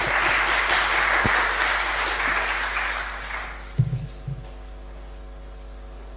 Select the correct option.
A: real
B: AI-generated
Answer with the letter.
A